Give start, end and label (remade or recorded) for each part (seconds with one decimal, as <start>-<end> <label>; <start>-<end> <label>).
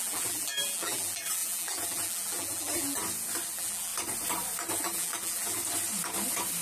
0.0-3.0 remade; 3.0-3.5 recorded; 3.5-3.9 remade; 3.9-4.8 recorded; 4.8-5.6 remade; 5.6-6.6 recorded